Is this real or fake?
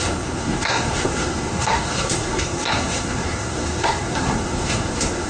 fake